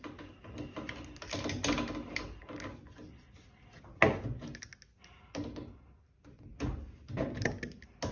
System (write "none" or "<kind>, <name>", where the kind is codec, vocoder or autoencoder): none